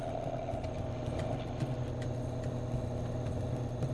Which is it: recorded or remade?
recorded